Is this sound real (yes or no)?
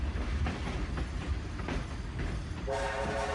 yes